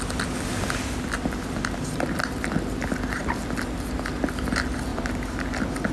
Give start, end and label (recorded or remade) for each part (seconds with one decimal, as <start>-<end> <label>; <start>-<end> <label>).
0.0-4.9 recorded; 4.9-5.4 remade; 5.4-5.9 recorded